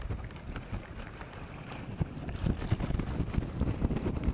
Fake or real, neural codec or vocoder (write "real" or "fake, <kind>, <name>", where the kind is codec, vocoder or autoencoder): real